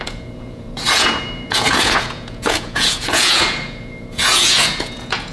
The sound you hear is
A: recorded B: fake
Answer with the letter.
B